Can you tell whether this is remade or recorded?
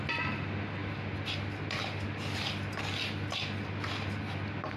recorded